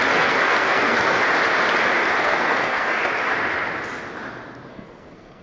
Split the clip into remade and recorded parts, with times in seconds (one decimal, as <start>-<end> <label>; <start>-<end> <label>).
0.0-1.2 remade; 1.2-2.2 recorded; 2.2-3.0 remade; 3.0-4.7 recorded; 4.7-5.4 remade